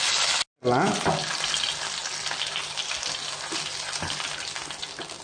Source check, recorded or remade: recorded